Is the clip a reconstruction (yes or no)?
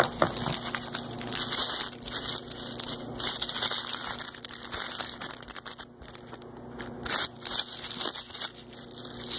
no